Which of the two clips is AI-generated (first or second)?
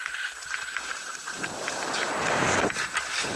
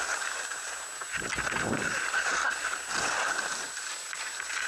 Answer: first